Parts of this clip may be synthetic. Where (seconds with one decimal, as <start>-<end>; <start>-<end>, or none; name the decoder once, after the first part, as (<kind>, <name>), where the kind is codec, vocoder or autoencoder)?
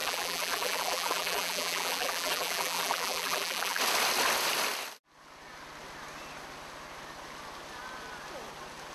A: 0.0-3.8 (vocoder, BigVGAN v2)